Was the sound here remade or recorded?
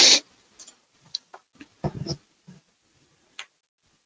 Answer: recorded